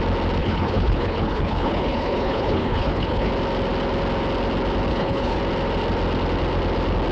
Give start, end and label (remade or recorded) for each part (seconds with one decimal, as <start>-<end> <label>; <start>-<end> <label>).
0.0-0.4 recorded; 0.4-3.3 remade; 3.3-4.9 recorded; 4.9-5.4 remade; 5.4-7.1 recorded